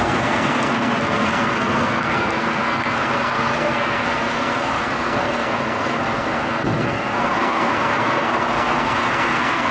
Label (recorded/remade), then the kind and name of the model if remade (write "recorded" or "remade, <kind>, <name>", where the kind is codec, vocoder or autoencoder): remade, codec, SNAC